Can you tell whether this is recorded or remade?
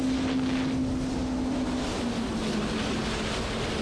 recorded